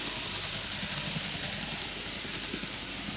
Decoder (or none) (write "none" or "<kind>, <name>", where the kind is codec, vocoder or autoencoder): none